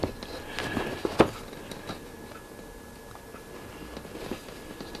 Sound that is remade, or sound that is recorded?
recorded